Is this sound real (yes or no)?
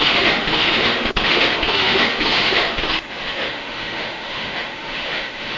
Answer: no